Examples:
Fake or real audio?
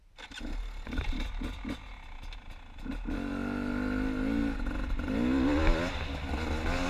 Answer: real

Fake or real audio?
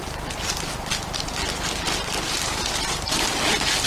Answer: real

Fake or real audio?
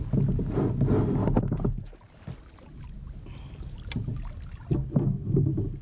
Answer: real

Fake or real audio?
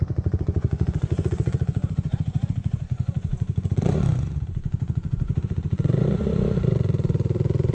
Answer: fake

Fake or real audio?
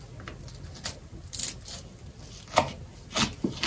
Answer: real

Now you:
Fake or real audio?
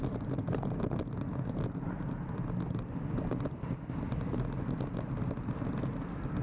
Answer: real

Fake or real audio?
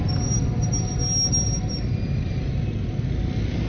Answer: real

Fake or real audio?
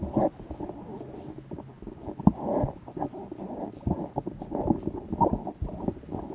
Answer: real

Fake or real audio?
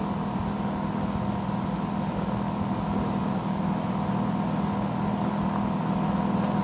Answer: real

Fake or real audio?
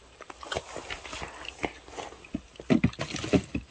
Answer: real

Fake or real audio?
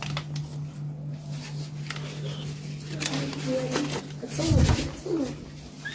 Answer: real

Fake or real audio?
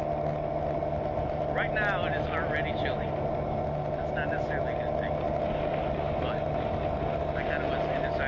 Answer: real